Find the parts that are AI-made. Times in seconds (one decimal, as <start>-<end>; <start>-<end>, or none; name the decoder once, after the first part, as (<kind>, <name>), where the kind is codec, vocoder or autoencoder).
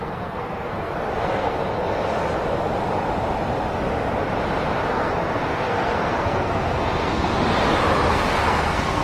0.0-1.6 (codec, SNAC); 4.9-7.3; 8.1-9.0